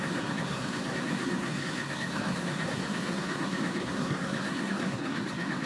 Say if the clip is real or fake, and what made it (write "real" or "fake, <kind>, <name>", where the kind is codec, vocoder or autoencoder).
fake, codec, SNAC